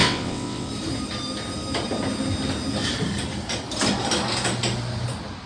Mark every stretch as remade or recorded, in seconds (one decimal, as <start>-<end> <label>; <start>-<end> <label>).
0.0-0.7 remade; 0.7-5.5 recorded